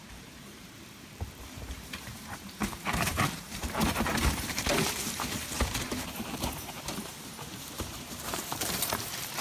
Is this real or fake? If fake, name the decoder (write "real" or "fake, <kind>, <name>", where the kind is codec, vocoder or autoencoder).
fake, vocoder, BigVGAN v2